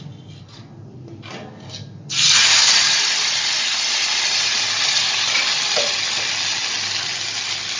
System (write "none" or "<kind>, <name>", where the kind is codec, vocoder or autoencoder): none